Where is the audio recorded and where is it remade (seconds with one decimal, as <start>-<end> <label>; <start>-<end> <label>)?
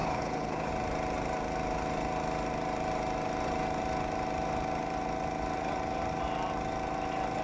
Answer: 0.0-0.7 remade; 0.7-7.4 recorded